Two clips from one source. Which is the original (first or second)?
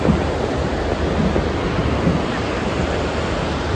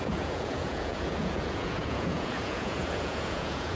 first